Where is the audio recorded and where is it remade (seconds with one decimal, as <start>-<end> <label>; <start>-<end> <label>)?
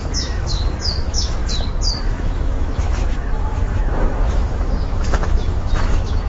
0.0-1.4 remade; 1.4-2.0 recorded; 2.0-6.3 remade